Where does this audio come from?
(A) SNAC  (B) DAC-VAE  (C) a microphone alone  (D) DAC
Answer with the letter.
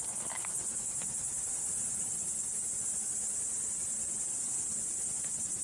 C